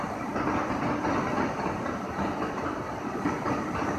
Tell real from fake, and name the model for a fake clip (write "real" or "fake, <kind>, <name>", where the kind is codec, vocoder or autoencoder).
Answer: fake, vocoder, BigVGAN v2